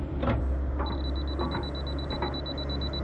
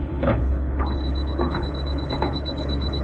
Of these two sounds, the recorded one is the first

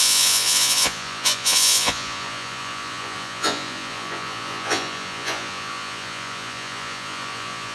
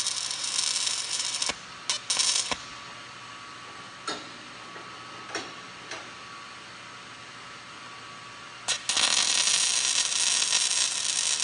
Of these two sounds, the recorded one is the second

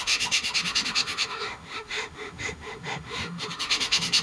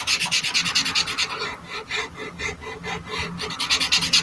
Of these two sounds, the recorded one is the second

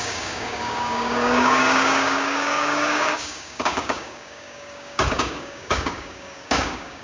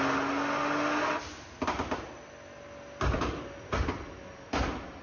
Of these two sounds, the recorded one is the second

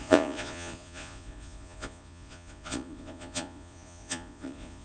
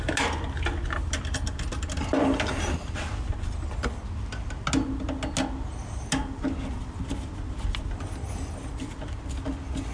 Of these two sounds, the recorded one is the second